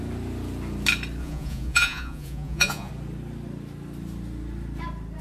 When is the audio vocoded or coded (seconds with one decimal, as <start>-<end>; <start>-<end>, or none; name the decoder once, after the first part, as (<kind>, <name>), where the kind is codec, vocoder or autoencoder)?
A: 1.2-2.9 (vocoder, Vocos)

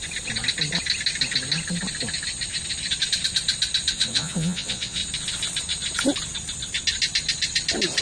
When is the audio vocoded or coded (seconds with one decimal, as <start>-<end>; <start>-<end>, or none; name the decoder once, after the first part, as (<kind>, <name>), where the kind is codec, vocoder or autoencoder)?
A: 3.9-5.0 (vocoder, Vocos)

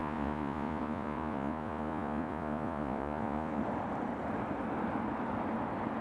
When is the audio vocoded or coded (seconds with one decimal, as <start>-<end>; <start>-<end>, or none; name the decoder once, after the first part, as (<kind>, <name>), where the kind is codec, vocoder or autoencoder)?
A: 0.0-3.6 (vocoder, Vocos)

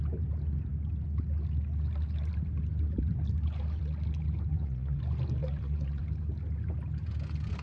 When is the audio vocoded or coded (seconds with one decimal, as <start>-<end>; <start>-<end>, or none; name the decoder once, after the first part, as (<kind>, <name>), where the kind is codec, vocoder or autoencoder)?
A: 4.5-5.0 (vocoder, Vocos); 5.4-6.0

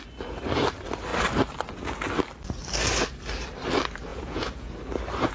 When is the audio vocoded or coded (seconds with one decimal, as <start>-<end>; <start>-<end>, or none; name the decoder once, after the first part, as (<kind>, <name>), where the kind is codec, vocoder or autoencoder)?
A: 4.1-4.7 (vocoder, Vocos)